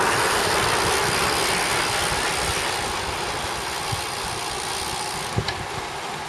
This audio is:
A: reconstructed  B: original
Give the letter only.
B